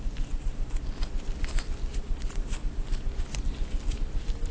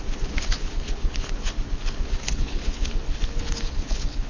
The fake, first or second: second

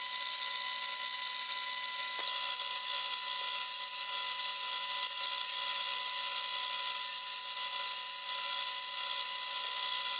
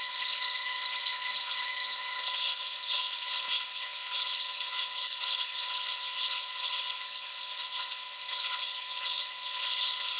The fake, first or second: second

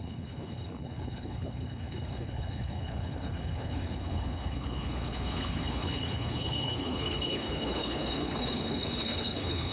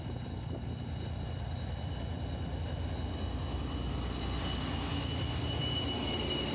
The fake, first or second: first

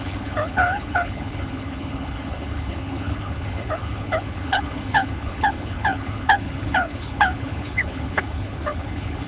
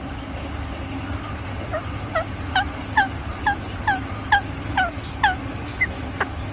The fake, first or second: first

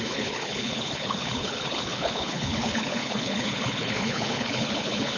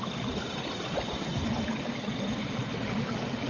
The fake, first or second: first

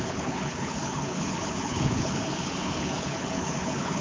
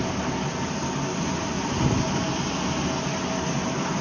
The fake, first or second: first